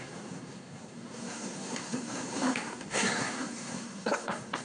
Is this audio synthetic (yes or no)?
yes